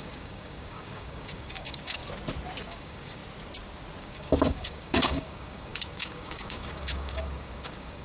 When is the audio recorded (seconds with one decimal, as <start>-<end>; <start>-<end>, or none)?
2.0-2.6; 3.2-4.0